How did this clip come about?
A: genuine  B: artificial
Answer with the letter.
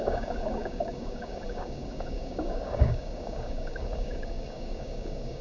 B